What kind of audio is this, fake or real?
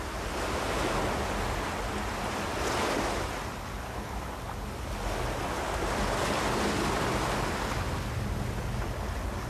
real